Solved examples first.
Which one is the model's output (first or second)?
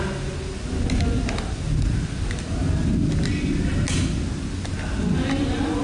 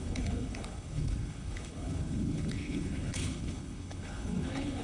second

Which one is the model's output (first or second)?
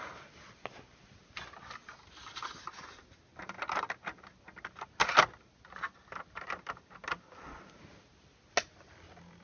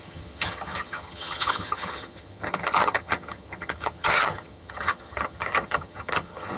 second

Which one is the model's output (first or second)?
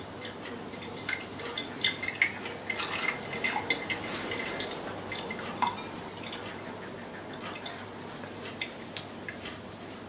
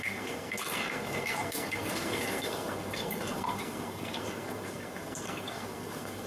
second